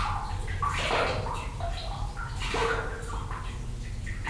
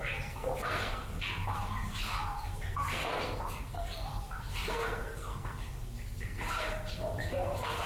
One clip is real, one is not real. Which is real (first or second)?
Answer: first